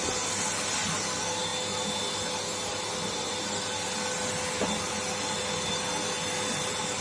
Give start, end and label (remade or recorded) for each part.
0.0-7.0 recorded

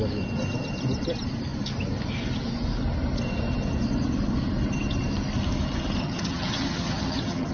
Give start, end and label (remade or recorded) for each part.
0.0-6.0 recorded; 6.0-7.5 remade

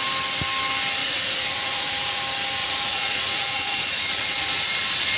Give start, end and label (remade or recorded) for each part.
0.0-1.0 recorded; 1.0-2.2 remade; 2.2-2.6 recorded; 2.6-4.7 remade; 4.7-5.2 recorded